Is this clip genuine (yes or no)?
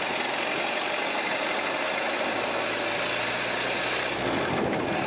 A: yes